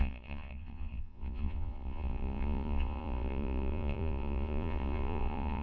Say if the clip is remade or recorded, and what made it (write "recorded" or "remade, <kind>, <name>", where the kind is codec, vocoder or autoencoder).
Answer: remade, vocoder, Vocos